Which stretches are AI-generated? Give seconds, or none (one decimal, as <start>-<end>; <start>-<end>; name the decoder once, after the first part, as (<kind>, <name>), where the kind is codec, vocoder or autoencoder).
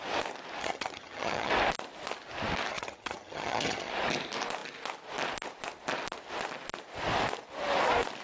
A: 0.6-1.5 (vocoder, HiFi-GAN); 2.7-3.9